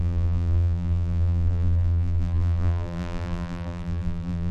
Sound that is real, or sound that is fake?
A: fake